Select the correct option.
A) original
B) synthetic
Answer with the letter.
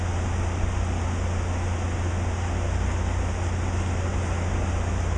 A